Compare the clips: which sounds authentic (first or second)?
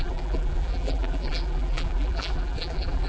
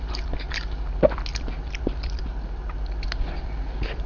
second